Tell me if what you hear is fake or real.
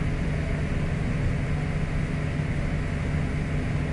real